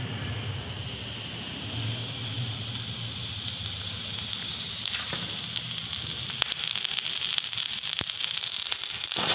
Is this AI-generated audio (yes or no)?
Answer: no